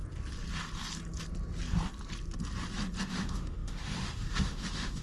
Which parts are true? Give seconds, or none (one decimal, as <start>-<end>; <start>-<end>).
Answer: 0.0-3.0